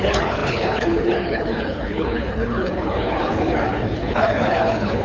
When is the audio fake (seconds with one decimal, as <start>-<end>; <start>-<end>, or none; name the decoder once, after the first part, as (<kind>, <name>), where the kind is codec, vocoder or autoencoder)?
0.0-5.0 (codec, HILCodec)